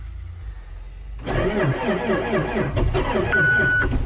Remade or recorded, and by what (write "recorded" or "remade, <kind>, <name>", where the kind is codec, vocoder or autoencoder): recorded